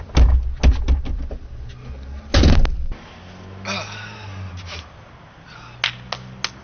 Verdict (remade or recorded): recorded